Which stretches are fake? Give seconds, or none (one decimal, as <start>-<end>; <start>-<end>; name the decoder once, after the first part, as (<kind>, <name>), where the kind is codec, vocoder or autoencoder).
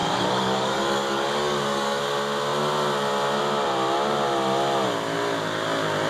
0.0-2.0 (codec, DAC)